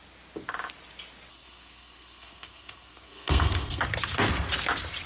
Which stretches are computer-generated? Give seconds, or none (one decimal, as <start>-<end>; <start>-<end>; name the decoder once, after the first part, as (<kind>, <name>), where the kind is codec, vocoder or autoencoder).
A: 1.3-3.8 (codec, SNAC)